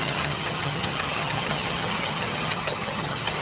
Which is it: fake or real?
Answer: fake